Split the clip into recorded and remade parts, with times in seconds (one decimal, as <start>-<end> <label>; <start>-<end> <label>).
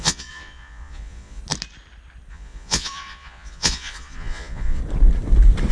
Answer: 0.0-1.4 remade; 1.4-2.3 recorded; 2.3-4.8 remade; 4.8-5.7 recorded